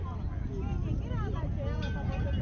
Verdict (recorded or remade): recorded